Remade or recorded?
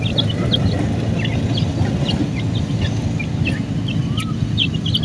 recorded